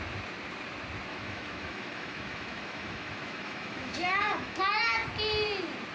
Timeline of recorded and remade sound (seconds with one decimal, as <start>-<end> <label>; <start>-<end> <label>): 0.0-1.1 recorded; 1.1-4.6 remade; 4.6-5.9 recorded